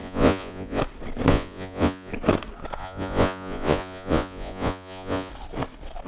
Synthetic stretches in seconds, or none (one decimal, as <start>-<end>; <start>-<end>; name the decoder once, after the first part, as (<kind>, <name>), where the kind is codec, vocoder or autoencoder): 0.0-0.8 (vocoder, Vocos); 1.3-2.1; 2.8-5.3